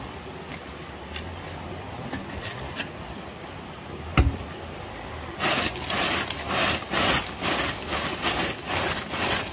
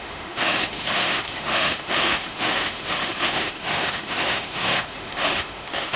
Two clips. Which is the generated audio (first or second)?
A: second